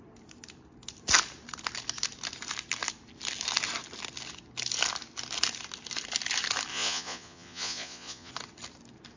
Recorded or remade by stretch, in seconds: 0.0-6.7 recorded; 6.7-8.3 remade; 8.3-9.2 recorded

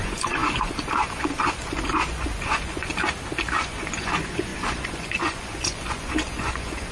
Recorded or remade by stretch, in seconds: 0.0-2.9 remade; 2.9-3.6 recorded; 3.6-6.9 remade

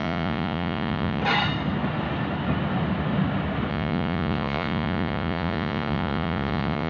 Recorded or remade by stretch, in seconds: 0.0-1.2 remade; 1.2-3.7 recorded; 3.7-6.9 remade